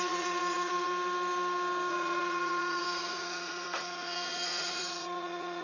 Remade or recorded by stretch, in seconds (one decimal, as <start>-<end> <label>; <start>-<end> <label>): 0.0-0.9 remade; 0.9-1.9 recorded; 1.9-5.6 remade

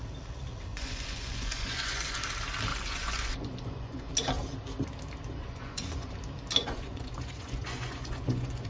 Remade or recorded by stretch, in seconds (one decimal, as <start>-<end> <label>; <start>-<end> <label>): 0.0-0.7 recorded; 0.7-2.2 remade; 2.2-2.7 recorded; 2.7-4.1 remade; 4.1-5.4 recorded; 5.4-6.1 remade; 6.1-6.6 recorded; 6.6-8.7 remade

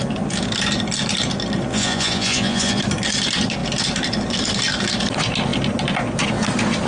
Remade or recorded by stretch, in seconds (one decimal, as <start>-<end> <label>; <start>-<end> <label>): 0.0-1.7 recorded; 1.7-2.8 remade; 2.8-6.9 recorded